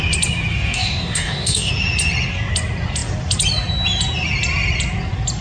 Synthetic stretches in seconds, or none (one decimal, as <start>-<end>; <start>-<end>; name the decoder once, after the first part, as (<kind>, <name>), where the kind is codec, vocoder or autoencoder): 0.5-1.7 (codec, DAC)